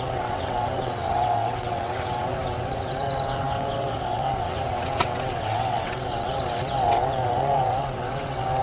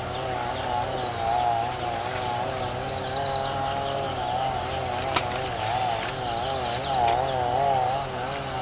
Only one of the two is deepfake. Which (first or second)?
first